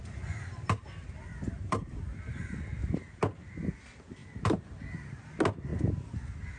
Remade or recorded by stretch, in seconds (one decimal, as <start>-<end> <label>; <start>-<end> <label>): 0.0-1.3 recorded; 1.3-2.6 remade; 2.6-4.2 recorded; 4.2-4.8 remade; 4.8-6.6 recorded